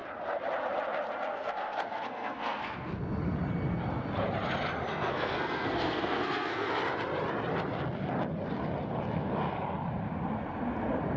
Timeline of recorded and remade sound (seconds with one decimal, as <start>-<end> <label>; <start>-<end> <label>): 0.0-1.3 recorded; 1.3-2.9 remade; 2.9-4.9 recorded; 4.9-6.7 remade; 6.7-11.2 recorded